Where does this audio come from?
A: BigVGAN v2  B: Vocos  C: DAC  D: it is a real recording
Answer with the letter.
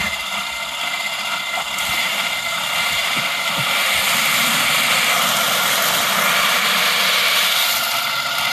D